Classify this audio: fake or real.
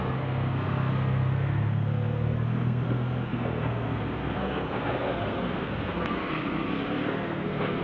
fake